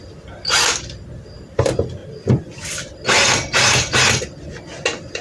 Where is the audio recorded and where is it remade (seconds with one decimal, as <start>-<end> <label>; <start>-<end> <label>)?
0.0-5.2 recorded